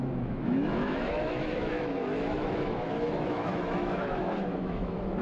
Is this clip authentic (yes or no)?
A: no